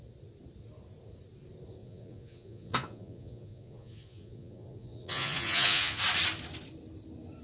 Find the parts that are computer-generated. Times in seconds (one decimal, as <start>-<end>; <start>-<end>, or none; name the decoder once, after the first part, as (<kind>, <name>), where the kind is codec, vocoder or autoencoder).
1.8-6.0 (vocoder, Vocos)